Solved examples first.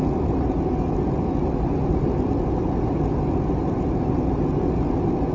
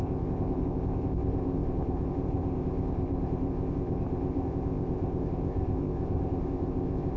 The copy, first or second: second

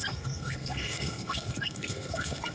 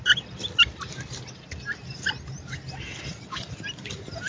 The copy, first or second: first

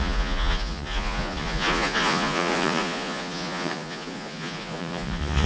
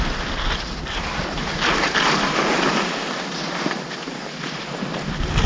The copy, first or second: first